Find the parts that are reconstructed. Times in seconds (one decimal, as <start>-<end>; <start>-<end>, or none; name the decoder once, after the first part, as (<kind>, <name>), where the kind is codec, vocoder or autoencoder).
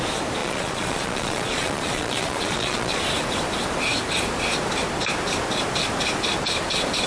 0.4-3.0 (vocoder, Vocos)